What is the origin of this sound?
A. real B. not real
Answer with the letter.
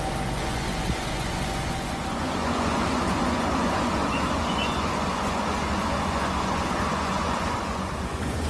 B